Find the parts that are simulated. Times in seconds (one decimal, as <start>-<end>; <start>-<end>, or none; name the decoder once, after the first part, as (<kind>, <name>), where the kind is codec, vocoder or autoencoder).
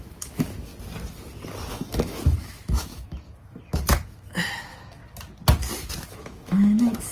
0.0-0.7 (autoencoder, DAC-VAE); 1.7-5.0; 5.9-7.1